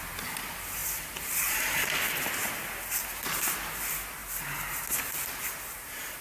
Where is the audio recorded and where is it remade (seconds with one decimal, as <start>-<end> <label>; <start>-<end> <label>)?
0.0-6.2 recorded